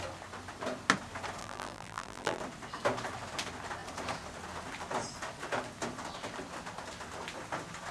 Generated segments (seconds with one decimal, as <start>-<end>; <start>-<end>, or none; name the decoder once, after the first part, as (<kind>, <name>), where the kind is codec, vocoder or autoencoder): 1.4-2.4 (vocoder, BigVGAN v2)